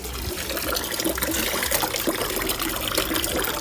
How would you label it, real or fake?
real